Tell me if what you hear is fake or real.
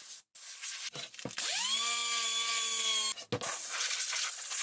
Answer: real